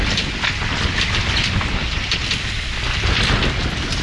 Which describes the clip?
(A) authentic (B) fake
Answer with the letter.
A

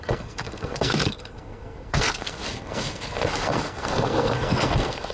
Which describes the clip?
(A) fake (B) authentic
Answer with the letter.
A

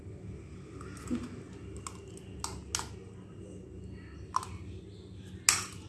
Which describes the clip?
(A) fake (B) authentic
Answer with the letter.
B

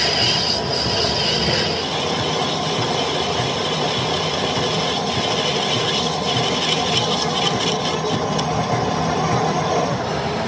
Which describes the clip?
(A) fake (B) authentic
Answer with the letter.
B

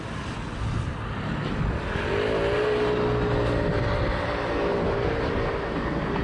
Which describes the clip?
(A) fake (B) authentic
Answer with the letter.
B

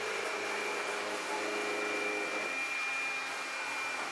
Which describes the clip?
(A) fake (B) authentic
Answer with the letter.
B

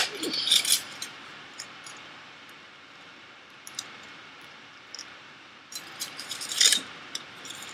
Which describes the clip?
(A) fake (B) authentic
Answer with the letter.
A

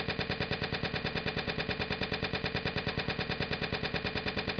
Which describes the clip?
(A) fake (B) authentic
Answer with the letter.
A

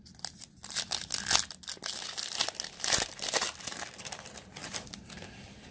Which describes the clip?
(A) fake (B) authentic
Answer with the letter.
B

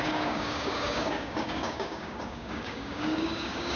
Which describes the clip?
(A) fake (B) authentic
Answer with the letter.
A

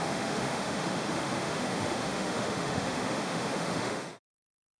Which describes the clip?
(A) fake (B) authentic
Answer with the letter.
A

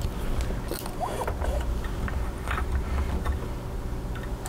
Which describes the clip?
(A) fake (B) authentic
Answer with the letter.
B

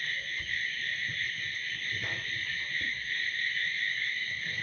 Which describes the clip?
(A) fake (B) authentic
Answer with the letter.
A